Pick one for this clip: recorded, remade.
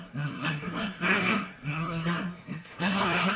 remade